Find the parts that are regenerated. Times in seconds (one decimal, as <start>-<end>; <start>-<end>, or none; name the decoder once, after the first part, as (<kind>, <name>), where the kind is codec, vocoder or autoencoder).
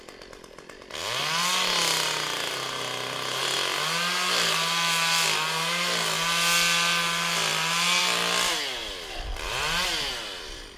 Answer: none